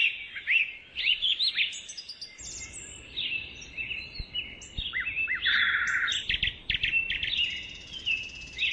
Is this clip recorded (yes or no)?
yes